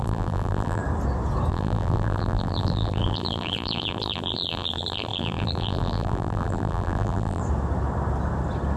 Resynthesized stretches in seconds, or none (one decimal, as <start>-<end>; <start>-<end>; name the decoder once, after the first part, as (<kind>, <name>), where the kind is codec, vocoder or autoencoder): 0.0-0.8 (vocoder, BigVGAN v2); 1.5-7.4